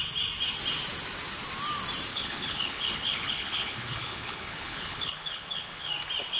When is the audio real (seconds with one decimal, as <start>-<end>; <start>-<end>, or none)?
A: 0.0-2.1; 5.9-6.4